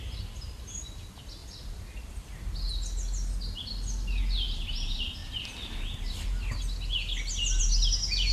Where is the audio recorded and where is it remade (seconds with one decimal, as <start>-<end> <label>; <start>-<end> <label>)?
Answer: 0.0-8.3 recorded